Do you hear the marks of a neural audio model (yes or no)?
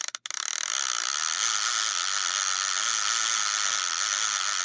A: no